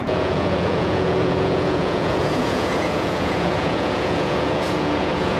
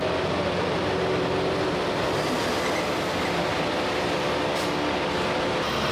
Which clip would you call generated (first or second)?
first